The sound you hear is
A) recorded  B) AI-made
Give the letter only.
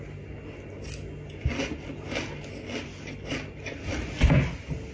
A